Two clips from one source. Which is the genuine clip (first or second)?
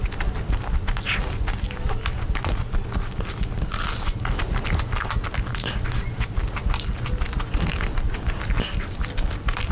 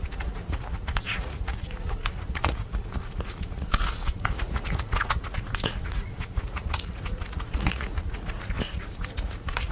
first